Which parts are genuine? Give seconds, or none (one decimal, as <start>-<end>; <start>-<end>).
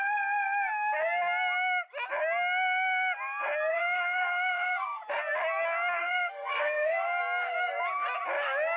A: 0.0-3.7; 5.0-6.0; 7.2-8.8